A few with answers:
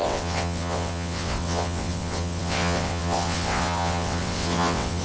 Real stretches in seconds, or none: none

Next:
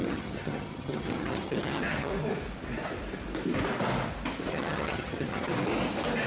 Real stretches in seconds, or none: 2.1-4.5; 5.5-6.3

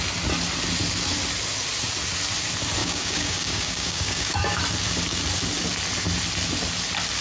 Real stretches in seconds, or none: 0.0-2.8; 4.6-7.2

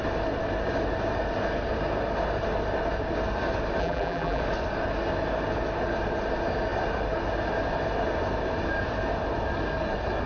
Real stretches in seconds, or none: 0.0-3.8; 4.4-10.3

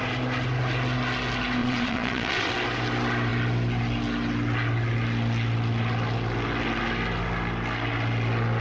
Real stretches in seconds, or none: 0.0-1.6; 2.5-8.6

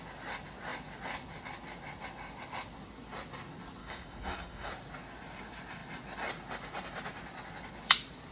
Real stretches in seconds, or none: 0.0-3.8; 4.7-8.3

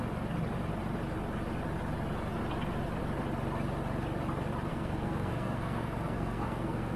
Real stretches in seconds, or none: 0.0-4.7

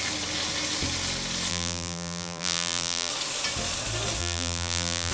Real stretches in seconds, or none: 0.0-1.5; 3.1-4.2